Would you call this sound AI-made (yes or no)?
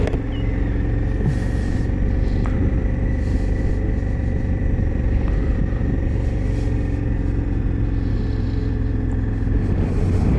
no